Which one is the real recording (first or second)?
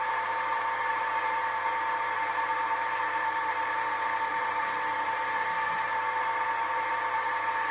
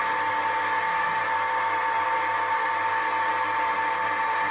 second